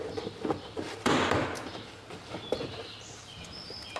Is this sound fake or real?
fake